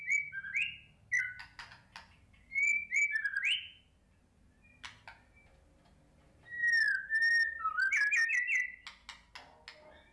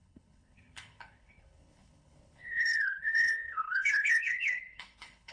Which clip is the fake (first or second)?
second